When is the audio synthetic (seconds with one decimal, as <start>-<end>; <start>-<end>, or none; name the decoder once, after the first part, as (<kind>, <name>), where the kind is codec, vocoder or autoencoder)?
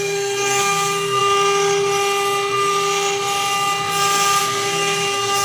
0.0-1.2 (codec, SNAC); 4.4-5.4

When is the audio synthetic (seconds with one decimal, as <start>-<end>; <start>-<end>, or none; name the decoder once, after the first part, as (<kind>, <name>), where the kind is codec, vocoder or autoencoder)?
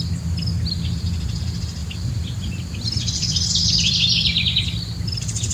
1.8-4.6 (vocoder, BigVGAN v2)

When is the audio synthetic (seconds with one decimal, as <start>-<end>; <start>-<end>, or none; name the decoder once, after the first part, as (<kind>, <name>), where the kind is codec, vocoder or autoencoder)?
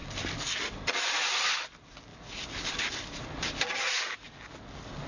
0.0-0.7 (vocoder, BigVGAN v2); 2.1-3.7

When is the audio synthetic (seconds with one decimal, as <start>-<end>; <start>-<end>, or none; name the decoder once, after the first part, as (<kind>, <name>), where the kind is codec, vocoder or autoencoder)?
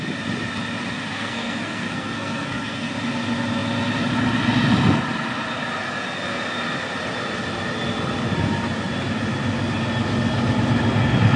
1.1-2.9 (codec, SNAC)